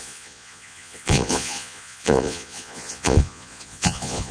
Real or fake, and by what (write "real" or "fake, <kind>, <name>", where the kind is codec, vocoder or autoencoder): fake, vocoder, Vocos